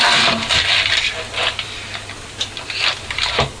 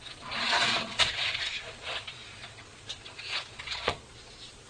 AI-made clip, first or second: second